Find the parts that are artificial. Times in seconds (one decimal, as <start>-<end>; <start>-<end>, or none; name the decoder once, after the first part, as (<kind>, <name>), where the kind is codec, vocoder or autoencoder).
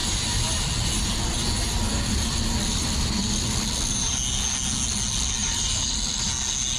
0.0-4.1 (vocoder, BigVGAN v2); 5.4-6.3